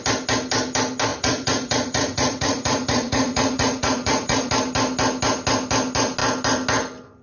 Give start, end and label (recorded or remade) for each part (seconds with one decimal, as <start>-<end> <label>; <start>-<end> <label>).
0.0-1.1 recorded; 1.1-4.5 remade; 4.5-7.2 recorded